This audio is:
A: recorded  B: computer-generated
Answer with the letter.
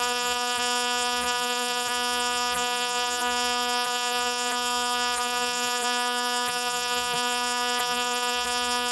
B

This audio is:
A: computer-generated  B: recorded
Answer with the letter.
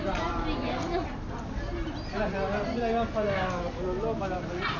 B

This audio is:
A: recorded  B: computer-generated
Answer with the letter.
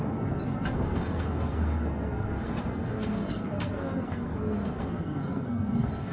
B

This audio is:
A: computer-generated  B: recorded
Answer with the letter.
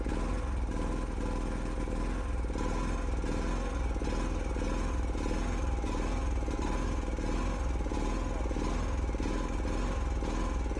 B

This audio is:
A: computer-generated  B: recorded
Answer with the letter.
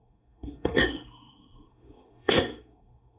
A